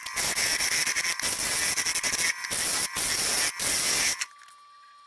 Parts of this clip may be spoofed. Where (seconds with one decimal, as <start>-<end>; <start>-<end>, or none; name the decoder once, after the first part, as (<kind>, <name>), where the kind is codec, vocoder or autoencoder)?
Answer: none